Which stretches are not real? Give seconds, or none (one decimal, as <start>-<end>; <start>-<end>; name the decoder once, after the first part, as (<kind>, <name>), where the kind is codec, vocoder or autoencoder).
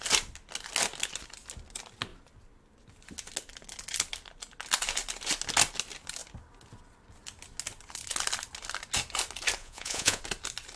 9.6-10.2 (vocoder, Vocos)